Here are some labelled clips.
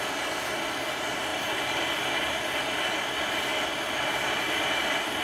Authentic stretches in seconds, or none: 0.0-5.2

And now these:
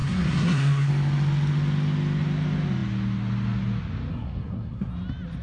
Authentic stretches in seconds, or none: 0.9-4.1; 4.9-5.4

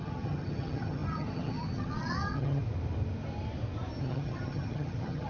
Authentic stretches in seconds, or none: 2.6-4.0